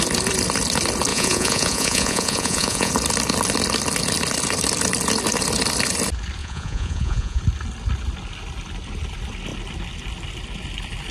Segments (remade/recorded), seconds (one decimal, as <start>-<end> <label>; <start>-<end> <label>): 0.0-1.1 recorded; 1.1-2.9 remade; 2.9-6.4 recorded; 6.4-7.4 remade; 7.4-11.1 recorded